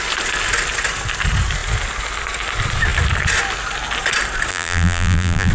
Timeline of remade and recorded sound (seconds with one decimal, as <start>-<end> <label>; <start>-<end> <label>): 0.0-4.5 recorded; 4.5-5.5 remade